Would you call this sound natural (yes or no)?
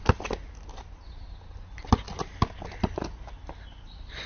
yes